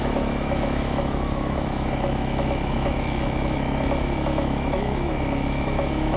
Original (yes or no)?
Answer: no